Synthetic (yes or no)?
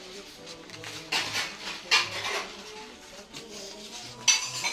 no